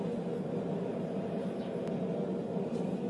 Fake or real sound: real